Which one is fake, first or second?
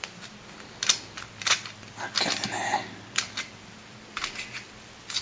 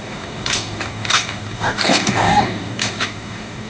second